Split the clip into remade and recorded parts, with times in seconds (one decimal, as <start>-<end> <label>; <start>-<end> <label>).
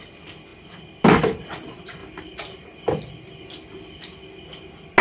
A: 0.0-5.0 recorded